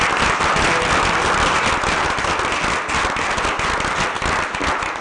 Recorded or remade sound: recorded